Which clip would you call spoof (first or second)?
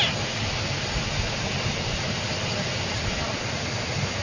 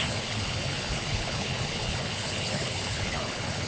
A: second